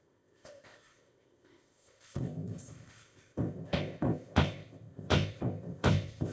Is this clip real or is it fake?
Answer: fake